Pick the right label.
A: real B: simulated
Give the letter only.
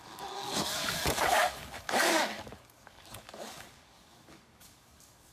B